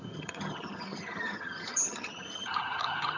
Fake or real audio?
fake